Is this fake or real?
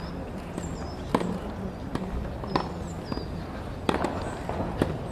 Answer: real